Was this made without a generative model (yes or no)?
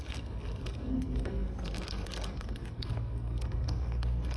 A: no